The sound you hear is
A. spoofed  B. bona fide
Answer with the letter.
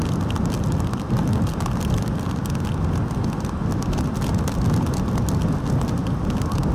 B